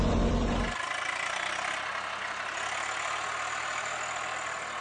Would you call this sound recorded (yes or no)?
yes